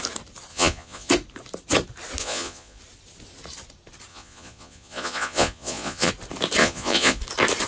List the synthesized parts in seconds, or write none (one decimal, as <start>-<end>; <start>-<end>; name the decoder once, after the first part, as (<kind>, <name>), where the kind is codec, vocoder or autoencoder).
0.5-1.1 (vocoder, Vocos); 2.2-2.8; 4.1-6.1; 6.6-7.2

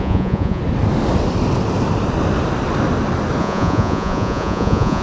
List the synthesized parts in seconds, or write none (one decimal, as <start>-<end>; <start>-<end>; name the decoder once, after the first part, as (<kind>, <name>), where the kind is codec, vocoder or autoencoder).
0.0-0.6 (vocoder, Vocos); 3.4-5.0

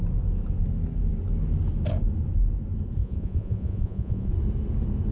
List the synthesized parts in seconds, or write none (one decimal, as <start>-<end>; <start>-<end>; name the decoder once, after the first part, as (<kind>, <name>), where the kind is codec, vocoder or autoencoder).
3.0-4.3 (vocoder, Vocos)

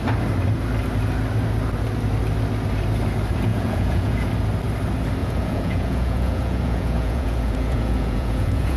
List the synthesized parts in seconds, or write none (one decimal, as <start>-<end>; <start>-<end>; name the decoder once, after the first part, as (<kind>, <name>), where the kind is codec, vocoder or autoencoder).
3.5-4.3 (vocoder, Vocos); 5.2-8.8

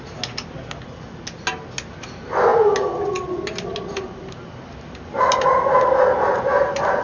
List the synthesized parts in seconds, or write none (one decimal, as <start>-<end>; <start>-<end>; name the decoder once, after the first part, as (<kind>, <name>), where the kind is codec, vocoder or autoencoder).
none

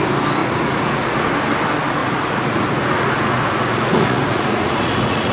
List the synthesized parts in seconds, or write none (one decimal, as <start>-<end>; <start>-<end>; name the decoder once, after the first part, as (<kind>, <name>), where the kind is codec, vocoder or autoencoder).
0.4-1.3 (vocoder, Vocos); 2.0-5.3

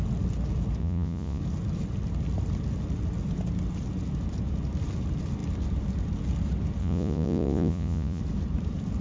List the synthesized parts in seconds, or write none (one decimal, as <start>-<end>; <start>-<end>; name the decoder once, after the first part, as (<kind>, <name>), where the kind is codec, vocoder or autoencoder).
0.8-1.4 (vocoder, Vocos); 6.8-8.2